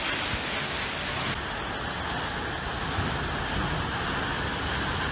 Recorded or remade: recorded